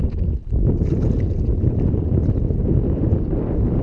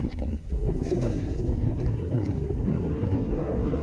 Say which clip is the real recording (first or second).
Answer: first